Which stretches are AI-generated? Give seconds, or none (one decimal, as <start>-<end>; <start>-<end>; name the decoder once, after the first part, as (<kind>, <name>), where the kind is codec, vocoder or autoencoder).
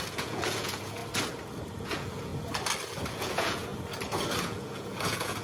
0.0-1.0 (vocoder, Vocos); 1.8-2.3; 3.1-3.7; 4.4-5.4